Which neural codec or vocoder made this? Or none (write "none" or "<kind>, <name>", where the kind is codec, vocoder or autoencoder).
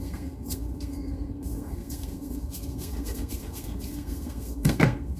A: codec, SNAC